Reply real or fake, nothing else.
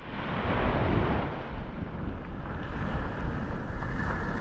real